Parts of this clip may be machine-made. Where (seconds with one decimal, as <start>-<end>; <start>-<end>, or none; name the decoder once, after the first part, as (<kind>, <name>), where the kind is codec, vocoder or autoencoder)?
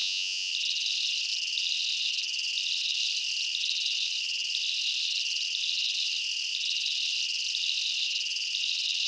0.0-0.5 (vocoder, Vocos)